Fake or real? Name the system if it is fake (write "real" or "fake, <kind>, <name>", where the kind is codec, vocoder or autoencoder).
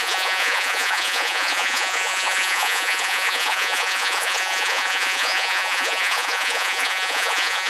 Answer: fake, vocoder, Vocos